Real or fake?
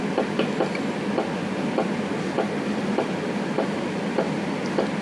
real